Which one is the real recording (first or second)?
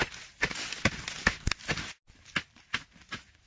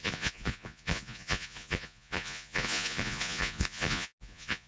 first